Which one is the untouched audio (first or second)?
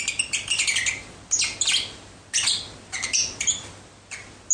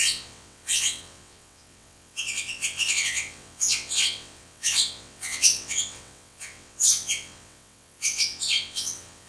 first